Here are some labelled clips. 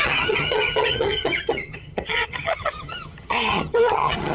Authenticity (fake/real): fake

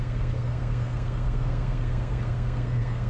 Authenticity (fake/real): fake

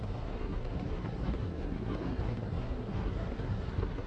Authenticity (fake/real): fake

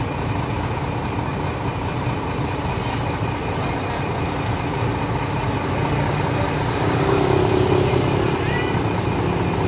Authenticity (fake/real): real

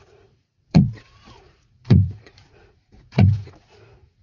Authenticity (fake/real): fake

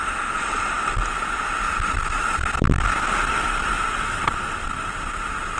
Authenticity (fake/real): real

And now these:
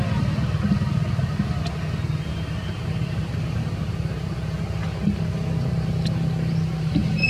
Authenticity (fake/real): real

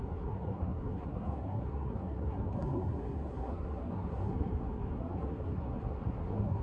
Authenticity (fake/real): fake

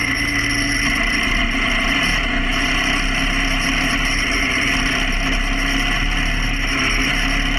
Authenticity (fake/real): real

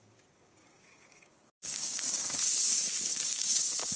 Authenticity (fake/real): fake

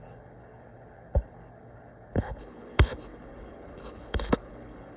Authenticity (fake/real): fake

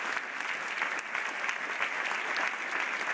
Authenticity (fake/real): real